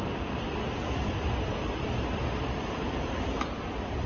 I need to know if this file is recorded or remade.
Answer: recorded